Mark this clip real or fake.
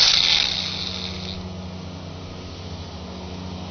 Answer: real